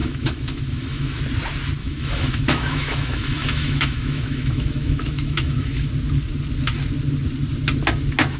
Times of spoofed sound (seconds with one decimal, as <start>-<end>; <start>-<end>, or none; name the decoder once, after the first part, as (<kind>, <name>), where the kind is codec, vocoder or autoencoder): 0.0-1.2 (autoencoder, DAC-VAE); 1.8-5.9